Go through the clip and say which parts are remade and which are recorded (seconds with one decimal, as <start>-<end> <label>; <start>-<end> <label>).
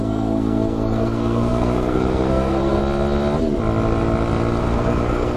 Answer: 0.0-2.8 remade; 2.8-4.6 recorded; 4.6-5.4 remade